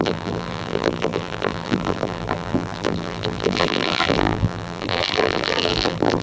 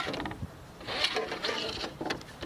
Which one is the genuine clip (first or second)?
second